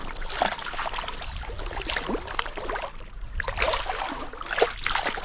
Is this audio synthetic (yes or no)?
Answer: no